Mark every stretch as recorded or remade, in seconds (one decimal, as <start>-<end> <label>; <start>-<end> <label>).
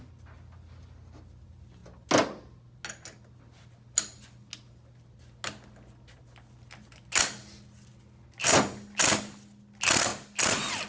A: 0.0-10.9 recorded